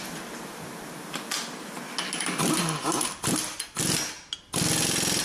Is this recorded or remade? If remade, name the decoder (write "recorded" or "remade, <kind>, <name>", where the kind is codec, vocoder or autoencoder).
recorded